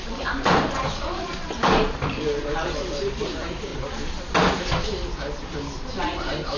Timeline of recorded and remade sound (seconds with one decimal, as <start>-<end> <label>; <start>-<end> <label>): 0.0-3.7 remade; 3.7-5.9 recorded; 5.9-6.6 remade